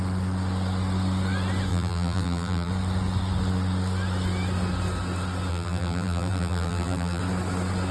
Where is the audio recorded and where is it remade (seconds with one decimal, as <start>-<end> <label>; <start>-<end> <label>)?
0.0-1.7 recorded; 1.7-2.7 remade; 2.7-5.5 recorded; 5.5-7.2 remade; 7.2-7.9 recorded